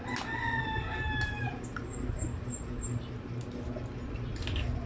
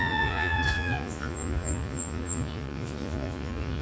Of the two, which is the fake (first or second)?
second